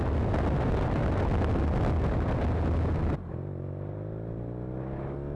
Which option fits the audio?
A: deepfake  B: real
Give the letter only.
B